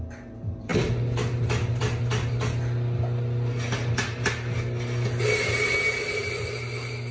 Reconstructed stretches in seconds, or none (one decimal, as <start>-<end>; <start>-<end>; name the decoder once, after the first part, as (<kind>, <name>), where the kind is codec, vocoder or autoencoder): none